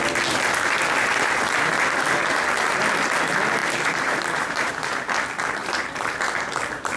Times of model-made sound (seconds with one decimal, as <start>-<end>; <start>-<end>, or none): 3.6-4.7; 5.6-6.2